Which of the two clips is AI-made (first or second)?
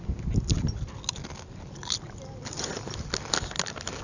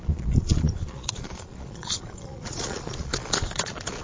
second